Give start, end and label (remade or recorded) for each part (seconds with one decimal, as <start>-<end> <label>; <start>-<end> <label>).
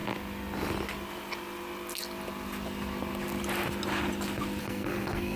0.0-4.6 recorded; 4.6-5.4 remade